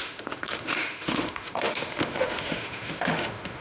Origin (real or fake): fake